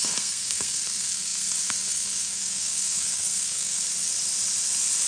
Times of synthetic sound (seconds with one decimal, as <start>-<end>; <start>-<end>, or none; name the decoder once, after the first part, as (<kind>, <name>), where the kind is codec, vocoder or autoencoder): 0.0-3.8 (codec, SNAC)